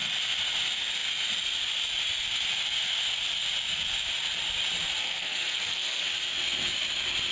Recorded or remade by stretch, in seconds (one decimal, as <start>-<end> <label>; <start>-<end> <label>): 0.0-5.0 recorded; 5.0-6.0 remade; 6.0-7.3 recorded